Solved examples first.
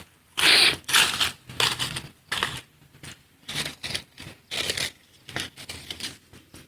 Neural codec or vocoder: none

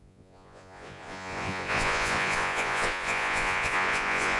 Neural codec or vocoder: vocoder, Vocos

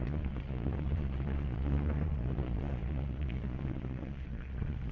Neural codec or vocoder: vocoder, Vocos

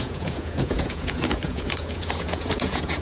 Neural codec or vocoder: vocoder, Vocos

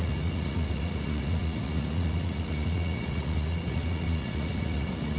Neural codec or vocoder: vocoder, Vocos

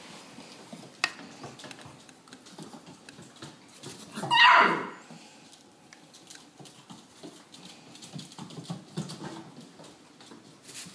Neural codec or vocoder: none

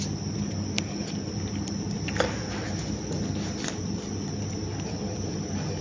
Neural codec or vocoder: none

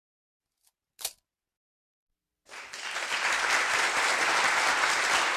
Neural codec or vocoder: none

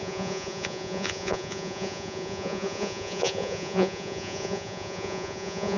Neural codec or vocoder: vocoder, Vocos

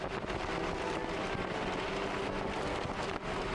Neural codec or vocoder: none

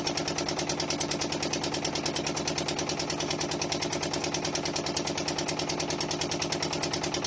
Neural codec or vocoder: none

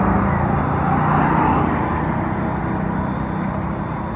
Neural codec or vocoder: none